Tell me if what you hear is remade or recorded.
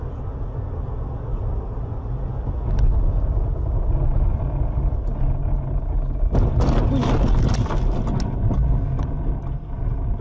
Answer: recorded